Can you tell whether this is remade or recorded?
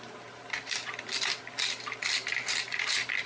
recorded